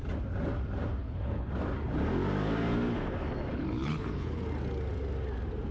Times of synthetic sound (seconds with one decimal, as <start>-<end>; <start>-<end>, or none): 1.0-1.5; 3.5-4.4